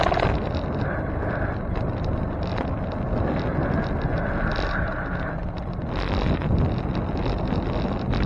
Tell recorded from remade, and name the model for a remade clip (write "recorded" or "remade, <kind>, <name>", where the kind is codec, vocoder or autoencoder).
recorded